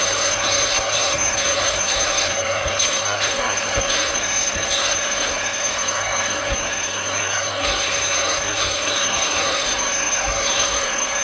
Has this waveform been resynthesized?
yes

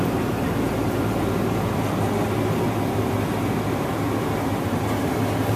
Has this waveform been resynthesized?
no